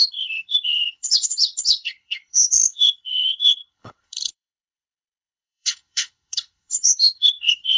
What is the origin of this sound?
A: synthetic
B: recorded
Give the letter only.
A